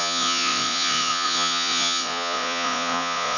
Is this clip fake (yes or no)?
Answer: yes